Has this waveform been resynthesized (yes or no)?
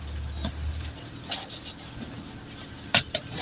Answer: no